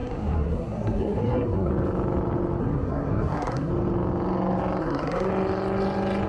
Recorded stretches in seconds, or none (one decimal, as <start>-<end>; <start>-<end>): 1.7-2.6; 3.7-4.8; 5.3-6.3